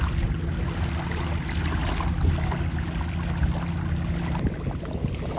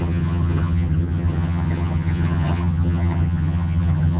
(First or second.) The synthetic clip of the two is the second